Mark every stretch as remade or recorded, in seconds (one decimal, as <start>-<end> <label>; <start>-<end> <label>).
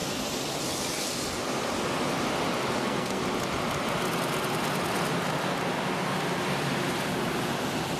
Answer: 0.0-2.8 recorded; 2.8-3.2 remade; 3.2-8.0 recorded